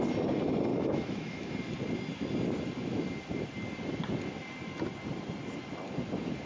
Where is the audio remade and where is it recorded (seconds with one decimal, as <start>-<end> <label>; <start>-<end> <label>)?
0.0-0.7 recorded; 0.7-1.5 remade; 1.5-6.5 recorded